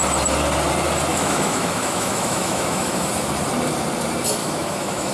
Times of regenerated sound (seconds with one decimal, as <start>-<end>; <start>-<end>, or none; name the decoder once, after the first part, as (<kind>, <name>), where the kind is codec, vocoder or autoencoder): 1.1-3.1 (autoencoder, DAC-VAE); 4.4-5.1